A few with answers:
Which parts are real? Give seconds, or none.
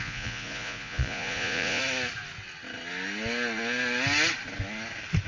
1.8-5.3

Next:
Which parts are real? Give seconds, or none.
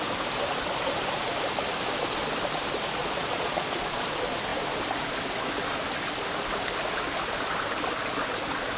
0.0-3.0; 4.0-8.8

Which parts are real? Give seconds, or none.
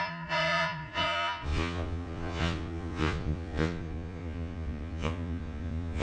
none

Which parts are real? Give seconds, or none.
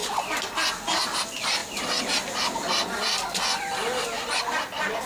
0.0-5.1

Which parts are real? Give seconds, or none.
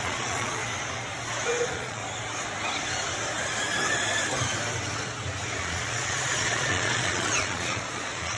0.6-1.6; 2.0-5.6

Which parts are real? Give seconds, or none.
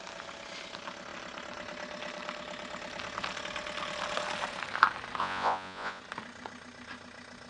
0.0-5.2; 6.0-7.5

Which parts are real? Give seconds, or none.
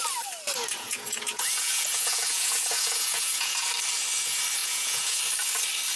0.0-0.6; 3.7-4.6; 5.2-6.0